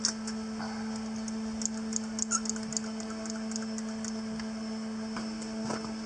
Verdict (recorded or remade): recorded